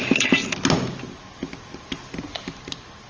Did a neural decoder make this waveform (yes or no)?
no